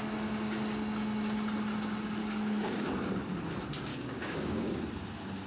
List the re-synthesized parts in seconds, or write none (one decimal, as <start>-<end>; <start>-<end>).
2.2-3.1; 3.9-4.8